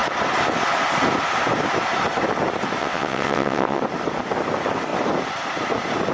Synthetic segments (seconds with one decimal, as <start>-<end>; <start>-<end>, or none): 2.8-3.8